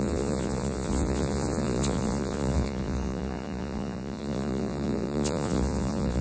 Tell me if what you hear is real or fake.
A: fake